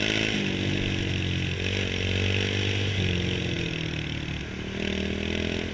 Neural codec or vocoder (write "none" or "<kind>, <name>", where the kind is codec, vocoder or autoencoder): none